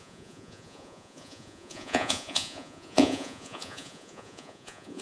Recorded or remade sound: remade